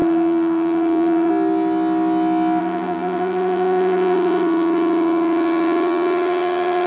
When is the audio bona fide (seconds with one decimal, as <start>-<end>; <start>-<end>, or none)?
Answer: 1.3-2.6